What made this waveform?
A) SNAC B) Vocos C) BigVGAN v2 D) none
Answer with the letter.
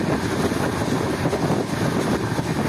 D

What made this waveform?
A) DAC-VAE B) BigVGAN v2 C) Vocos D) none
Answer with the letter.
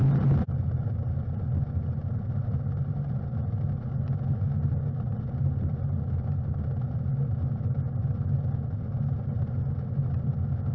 D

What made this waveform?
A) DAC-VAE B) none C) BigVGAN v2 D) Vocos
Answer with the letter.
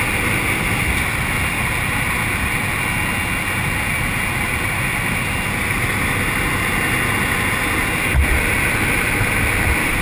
B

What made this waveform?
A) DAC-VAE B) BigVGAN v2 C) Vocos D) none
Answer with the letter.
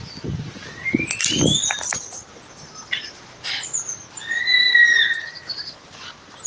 D